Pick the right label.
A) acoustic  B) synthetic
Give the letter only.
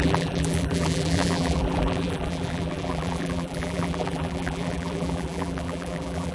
B